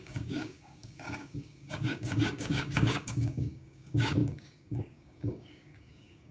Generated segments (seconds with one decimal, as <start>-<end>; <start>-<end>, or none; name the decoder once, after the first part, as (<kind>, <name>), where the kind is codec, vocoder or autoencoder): 0.0-6.3 (codec, DAC)